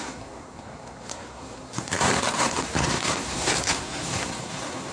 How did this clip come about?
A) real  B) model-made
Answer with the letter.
B